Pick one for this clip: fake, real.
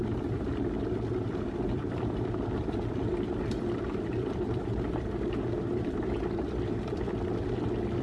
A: fake